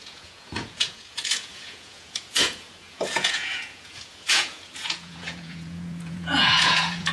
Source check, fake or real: fake